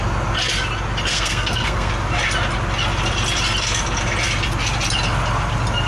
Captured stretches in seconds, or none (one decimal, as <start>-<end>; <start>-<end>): 0.0-1.1; 1.9-5.9